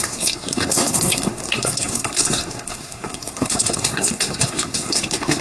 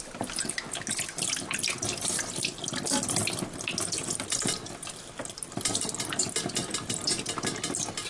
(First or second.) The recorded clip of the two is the second